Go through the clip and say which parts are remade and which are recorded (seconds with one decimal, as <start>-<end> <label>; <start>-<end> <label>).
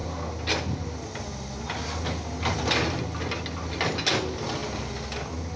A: 0.0-5.6 recorded